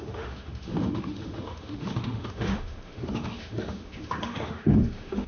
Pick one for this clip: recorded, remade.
remade